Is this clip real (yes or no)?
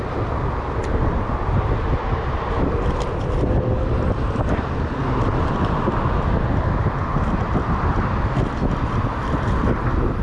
yes